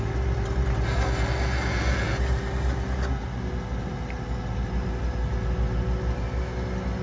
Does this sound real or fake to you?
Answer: real